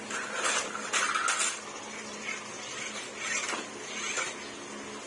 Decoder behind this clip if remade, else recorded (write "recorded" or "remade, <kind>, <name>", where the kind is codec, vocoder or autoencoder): recorded